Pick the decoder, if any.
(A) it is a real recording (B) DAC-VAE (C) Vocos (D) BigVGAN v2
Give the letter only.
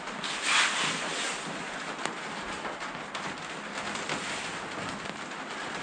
A